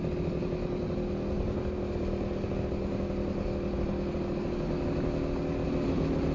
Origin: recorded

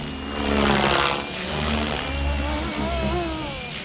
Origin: recorded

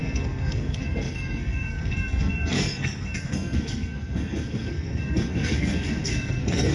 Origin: remade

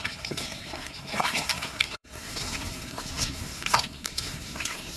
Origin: remade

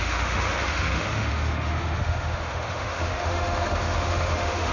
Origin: remade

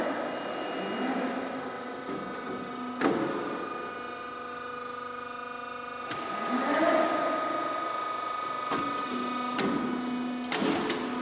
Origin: recorded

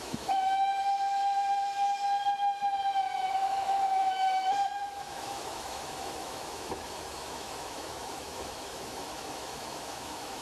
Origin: remade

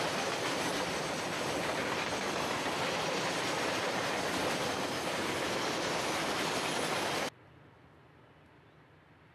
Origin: recorded